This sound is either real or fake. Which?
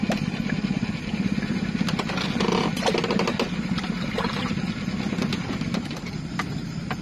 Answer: real